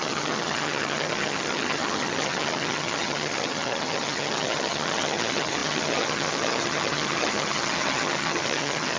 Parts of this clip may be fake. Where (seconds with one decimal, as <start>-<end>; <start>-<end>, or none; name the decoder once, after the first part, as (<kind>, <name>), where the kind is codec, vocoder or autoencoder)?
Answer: 0.0-9.0 (vocoder, HiFi-GAN)